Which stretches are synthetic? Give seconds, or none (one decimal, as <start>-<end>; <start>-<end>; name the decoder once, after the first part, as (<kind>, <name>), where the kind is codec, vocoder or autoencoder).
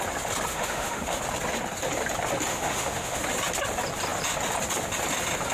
0.5-1.2 (autoencoder, DAC-VAE); 2.5-3.2